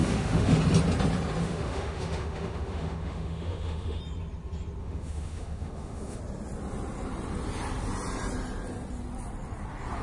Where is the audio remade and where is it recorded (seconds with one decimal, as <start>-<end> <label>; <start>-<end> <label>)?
0.0-0.6 remade; 0.6-1.4 recorded; 1.4-4.0 remade; 4.0-4.8 recorded; 4.8-6.2 remade; 6.2-10.0 recorded

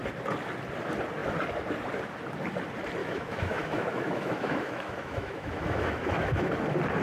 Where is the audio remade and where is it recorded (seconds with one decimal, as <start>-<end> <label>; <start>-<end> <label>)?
0.0-3.0 recorded; 3.0-6.5 remade; 6.5-7.0 recorded

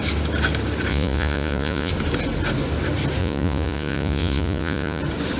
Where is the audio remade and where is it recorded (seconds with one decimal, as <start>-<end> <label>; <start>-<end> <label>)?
0.0-0.9 recorded; 0.9-1.9 remade; 1.9-3.2 recorded; 3.2-5.0 remade; 5.0-5.4 recorded

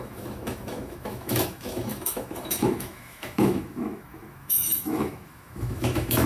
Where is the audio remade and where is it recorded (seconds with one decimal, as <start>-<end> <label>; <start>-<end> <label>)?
0.0-6.3 remade

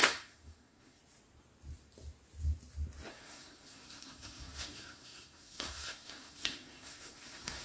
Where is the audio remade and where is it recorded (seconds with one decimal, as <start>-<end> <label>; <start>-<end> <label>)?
0.0-1.0 remade; 1.0-3.1 recorded; 3.1-7.6 remade

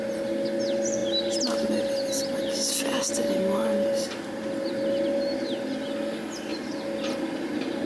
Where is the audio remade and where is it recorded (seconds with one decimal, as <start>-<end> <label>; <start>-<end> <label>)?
0.0-7.9 recorded

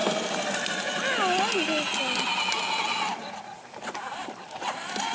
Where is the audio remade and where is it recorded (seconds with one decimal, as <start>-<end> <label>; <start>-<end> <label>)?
0.0-5.1 recorded